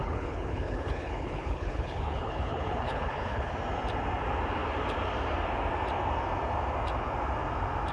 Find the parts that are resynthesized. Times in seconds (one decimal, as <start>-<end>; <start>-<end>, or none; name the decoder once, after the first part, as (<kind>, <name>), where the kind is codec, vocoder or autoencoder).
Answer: 0.0-3.5 (codec, HILCodec)